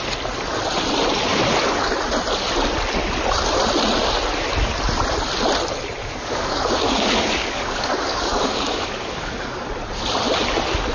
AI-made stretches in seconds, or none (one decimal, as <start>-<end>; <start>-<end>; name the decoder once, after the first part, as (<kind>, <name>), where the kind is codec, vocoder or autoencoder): 6.0-9.6 (codec, DAC)